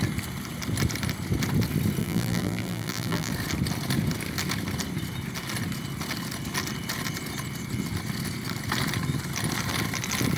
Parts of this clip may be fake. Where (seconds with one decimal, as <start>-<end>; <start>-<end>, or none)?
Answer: 2.0-3.3